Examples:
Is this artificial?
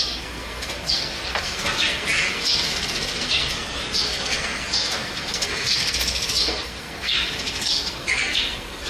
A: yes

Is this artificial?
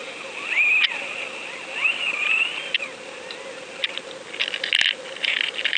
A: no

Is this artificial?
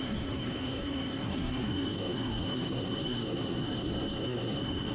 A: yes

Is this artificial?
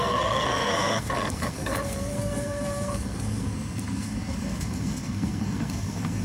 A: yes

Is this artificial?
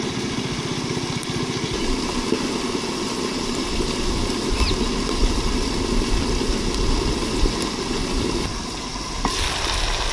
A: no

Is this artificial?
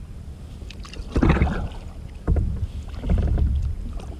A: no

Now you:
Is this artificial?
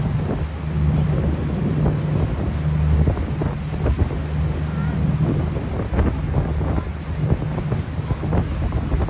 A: no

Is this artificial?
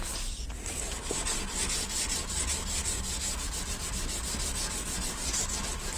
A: no